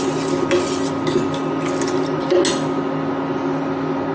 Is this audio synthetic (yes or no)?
no